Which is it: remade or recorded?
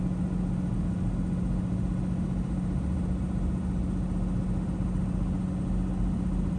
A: recorded